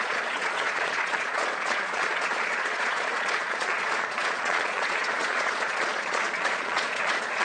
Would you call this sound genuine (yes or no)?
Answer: no